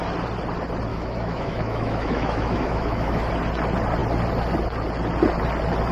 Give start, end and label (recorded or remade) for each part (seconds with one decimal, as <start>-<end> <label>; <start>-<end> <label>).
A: 0.0-0.9 recorded; 0.9-3.3 remade; 3.3-5.9 recorded